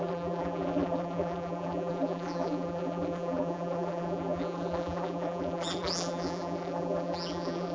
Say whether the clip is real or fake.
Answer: fake